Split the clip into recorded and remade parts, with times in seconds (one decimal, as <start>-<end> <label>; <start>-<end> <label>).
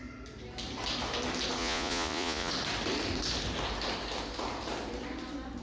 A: 0.0-1.6 recorded; 1.6-2.5 remade; 2.5-5.6 recorded